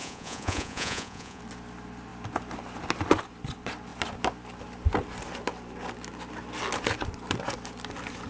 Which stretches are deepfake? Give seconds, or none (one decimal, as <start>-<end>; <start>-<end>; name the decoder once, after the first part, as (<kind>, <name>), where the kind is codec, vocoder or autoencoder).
0.0-1.4 (vocoder, Vocos)